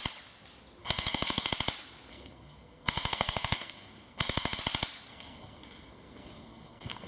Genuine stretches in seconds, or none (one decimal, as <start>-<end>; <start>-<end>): 0.0-0.8; 1.5-2.1; 4.6-5.1